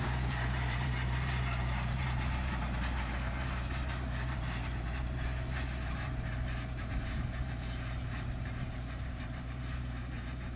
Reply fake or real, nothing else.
fake